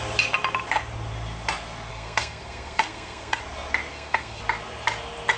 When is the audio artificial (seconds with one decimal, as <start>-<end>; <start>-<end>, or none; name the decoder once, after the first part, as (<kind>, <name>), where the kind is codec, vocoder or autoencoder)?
1.9-3.4 (codec, SNAC); 3.9-4.4